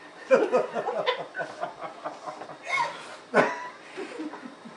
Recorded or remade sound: recorded